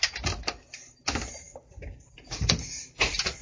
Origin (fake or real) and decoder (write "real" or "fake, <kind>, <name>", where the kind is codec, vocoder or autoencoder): real